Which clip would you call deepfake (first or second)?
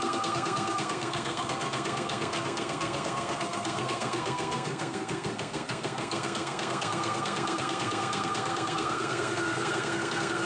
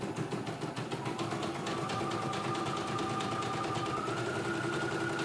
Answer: first